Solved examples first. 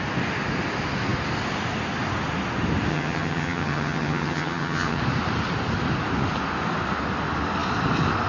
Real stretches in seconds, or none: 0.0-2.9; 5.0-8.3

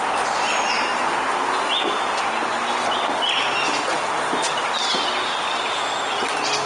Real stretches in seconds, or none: 0.0-4.8; 5.6-6.7

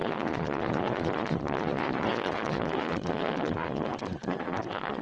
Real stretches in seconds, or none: none